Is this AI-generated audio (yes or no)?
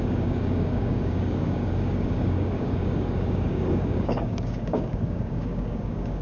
yes